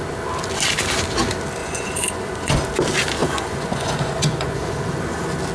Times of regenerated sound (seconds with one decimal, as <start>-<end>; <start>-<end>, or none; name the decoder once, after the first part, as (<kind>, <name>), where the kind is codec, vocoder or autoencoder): 1.6-2.6 (vocoder, Vocos); 3.2-4.8